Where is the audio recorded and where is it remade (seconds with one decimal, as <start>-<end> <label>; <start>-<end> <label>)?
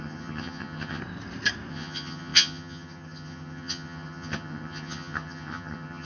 0.0-1.0 remade; 1.0-1.7 recorded; 1.7-6.0 remade